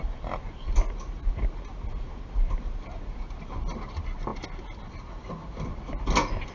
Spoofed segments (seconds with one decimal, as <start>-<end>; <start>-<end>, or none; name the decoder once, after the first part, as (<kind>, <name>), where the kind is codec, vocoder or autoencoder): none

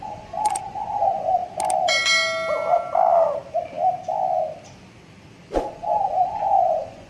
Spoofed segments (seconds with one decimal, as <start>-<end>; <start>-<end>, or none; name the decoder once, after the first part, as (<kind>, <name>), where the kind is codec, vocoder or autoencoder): 0.0-1.4 (vocoder, Vocos); 5.7-7.1

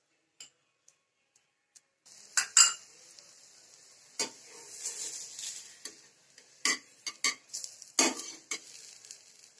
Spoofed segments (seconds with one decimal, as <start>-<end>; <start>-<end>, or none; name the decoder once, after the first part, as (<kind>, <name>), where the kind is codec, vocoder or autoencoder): none